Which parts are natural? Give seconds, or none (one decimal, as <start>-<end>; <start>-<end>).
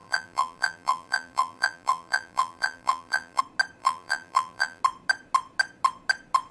3.4-3.8; 4.8-6.5